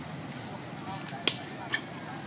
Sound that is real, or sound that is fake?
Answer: real